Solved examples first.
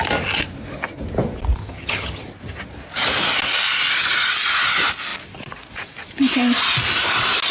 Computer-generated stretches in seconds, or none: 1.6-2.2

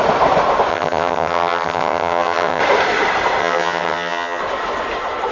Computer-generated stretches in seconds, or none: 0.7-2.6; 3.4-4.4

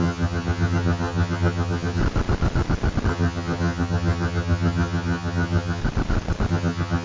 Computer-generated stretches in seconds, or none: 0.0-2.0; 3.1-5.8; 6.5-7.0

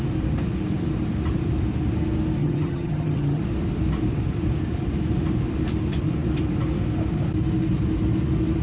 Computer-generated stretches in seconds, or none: 2.4-3.4